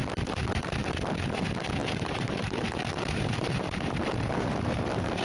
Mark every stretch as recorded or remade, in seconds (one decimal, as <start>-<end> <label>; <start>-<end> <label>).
0.0-1.8 recorded; 1.8-5.2 remade